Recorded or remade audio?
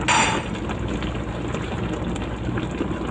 recorded